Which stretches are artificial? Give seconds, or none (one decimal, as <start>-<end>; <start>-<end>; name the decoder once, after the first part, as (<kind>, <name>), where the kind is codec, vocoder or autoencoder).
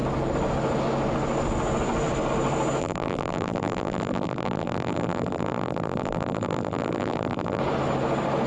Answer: 2.8-7.6 (vocoder, BigVGAN v2)